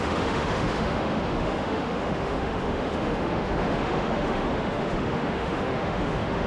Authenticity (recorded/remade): remade